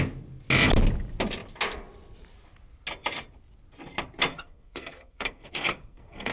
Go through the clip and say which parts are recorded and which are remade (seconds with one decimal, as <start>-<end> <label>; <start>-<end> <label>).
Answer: 0.0-4.3 recorded; 4.3-6.3 remade